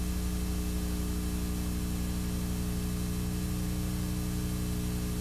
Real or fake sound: real